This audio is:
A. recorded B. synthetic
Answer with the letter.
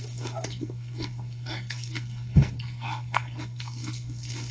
B